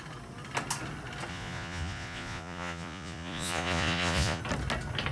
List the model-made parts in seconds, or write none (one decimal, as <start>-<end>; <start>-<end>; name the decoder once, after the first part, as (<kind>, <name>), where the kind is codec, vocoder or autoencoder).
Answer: 1.3-4.4 (vocoder, Vocos)